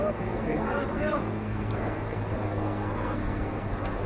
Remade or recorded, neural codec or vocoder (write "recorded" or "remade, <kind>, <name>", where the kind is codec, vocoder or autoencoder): remade, codec, SNAC